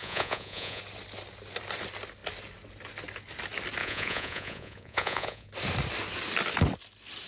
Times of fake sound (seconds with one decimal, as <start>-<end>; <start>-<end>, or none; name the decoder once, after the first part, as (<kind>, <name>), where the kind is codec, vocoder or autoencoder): 0.0-0.8 (vocoder, Vocos); 3.8-5.5